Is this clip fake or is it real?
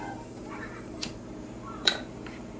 fake